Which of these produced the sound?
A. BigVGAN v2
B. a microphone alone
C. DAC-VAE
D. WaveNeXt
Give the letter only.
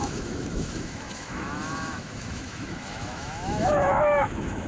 C